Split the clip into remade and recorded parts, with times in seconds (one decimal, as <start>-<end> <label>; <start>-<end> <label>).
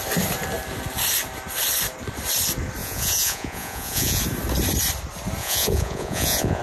0.0-2.8 recorded; 2.8-4.2 remade; 4.2-5.4 recorded; 5.4-6.6 remade